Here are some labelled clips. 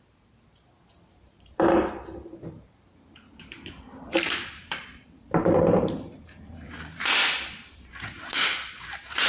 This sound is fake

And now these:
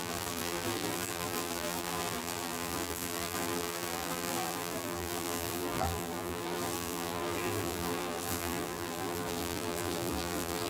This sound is fake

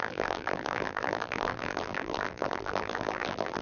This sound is fake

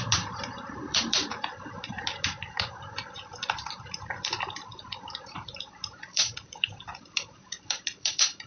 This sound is fake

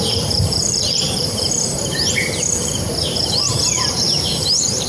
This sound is fake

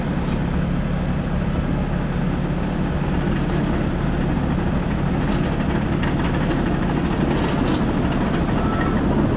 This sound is real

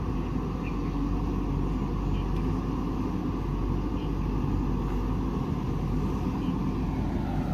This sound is real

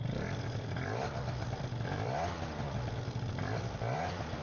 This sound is fake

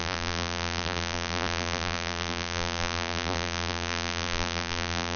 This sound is fake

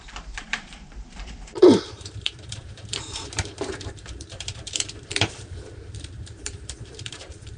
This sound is fake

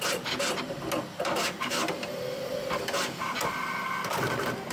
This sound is real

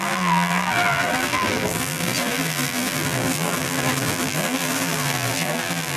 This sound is fake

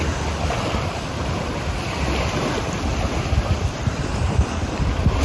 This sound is real